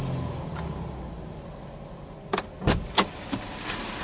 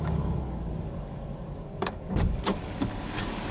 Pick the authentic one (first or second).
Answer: first